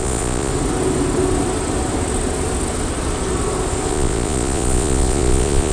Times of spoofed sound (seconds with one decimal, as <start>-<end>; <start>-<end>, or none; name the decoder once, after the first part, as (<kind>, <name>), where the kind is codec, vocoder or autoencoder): 0.0-0.5 (vocoder, Vocos); 3.9-5.7